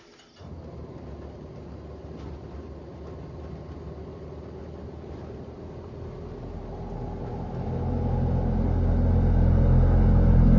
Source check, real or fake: real